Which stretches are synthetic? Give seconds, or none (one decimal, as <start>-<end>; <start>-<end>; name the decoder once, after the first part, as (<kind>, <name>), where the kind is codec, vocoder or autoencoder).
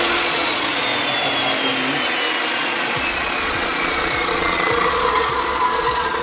0.0-0.9 (vocoder, Vocos); 2.5-6.2